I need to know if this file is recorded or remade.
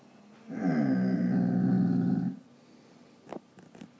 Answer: recorded